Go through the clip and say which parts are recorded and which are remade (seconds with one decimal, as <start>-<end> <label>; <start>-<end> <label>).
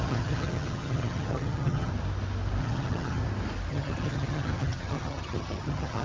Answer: 0.0-1.9 remade; 1.9-2.6 recorded; 2.6-3.2 remade; 3.2-3.7 recorded; 3.7-6.0 remade